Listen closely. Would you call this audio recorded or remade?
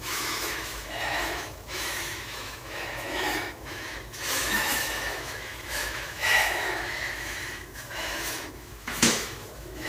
remade